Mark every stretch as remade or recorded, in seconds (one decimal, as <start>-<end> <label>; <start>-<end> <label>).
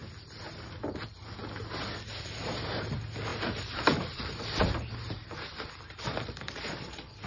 0.0-2.2 recorded; 2.2-7.3 remade